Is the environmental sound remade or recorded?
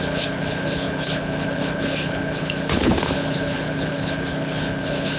remade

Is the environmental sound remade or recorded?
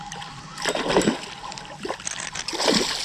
recorded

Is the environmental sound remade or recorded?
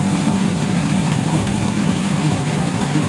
remade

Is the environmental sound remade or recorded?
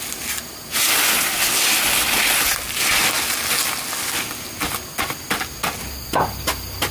recorded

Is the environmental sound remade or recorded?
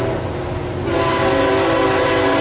recorded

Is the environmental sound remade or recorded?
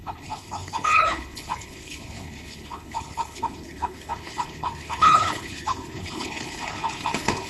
remade